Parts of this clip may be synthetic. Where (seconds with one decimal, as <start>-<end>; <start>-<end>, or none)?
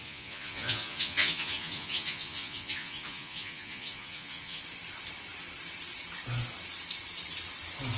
0.0-4.6